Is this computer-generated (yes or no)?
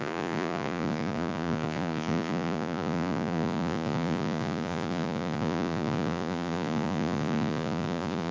yes